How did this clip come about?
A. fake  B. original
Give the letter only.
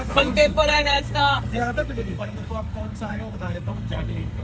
A